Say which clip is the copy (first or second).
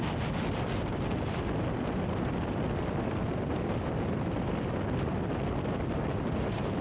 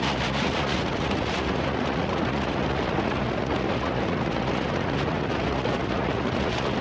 second